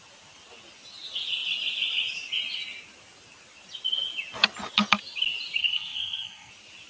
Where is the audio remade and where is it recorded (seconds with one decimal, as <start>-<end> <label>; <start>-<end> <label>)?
0.0-5.6 recorded; 5.6-6.5 remade; 6.5-6.9 recorded